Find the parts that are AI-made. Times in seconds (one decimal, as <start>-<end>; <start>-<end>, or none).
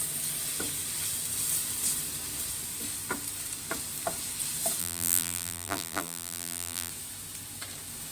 4.8-6.9